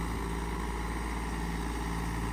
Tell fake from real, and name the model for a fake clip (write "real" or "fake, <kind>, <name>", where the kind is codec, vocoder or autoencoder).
real